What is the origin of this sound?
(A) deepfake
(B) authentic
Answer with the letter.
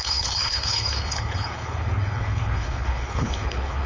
A